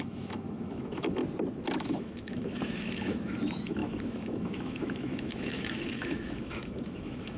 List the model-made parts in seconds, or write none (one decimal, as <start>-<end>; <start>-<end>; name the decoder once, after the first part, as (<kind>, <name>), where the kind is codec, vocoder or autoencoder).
0.0-1.2 (autoencoder, DAC-VAE); 1.8-7.4